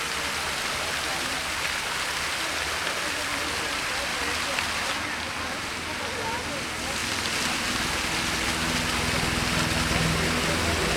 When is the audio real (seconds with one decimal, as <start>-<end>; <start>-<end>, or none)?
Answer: 0.0-11.0